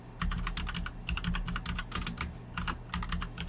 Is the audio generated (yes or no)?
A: no